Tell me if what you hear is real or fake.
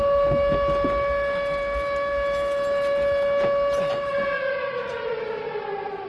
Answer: real